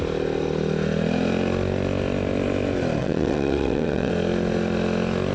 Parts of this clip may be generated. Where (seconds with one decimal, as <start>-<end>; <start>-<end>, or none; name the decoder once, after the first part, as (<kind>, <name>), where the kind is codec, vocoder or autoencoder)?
3.0-4.1 (vocoder, WaveNeXt)